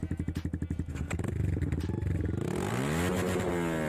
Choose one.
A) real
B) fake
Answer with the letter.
A